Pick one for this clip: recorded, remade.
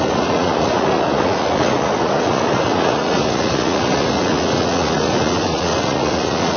remade